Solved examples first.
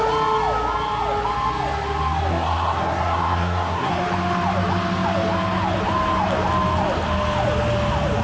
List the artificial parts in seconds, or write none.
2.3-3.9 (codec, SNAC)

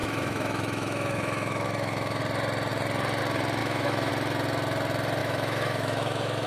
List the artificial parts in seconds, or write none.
0.0-2.2 (autoencoder, DAC-VAE); 3.6-4.1; 5.2-6.5

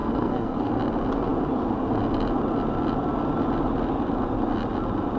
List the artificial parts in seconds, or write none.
0.0-0.7 (codec, SNAC)

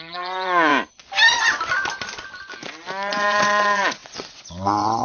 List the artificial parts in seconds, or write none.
0.0-0.7 (vocoder, WaveNeXt); 3.1-5.0

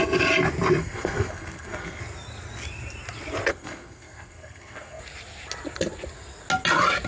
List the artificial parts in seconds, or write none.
0.8-2.0 (codec, SNAC); 3.5-5.0

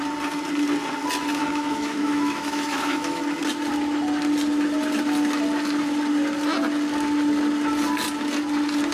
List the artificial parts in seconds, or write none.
1.4-3.2 (autoencoder, DAC-VAE)

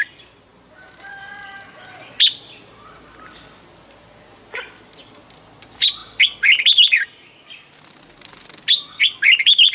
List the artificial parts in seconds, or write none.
none